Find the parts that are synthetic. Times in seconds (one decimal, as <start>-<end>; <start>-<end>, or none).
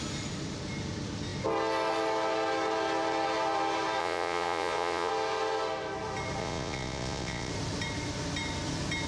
4.0-5.1; 6.4-7.5